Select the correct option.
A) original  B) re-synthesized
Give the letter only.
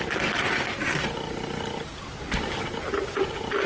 A